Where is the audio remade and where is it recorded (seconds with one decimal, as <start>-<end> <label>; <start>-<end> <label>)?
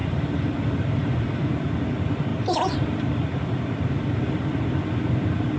0.0-1.5 remade; 1.5-5.6 recorded